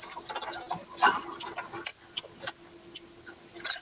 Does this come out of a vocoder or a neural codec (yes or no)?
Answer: no